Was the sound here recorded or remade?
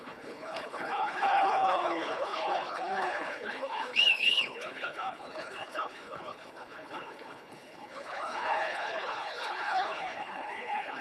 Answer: remade